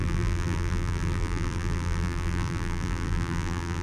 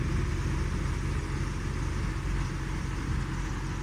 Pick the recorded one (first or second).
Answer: second